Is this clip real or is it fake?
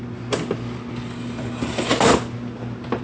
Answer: real